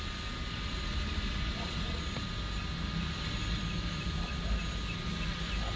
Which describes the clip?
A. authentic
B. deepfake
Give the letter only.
A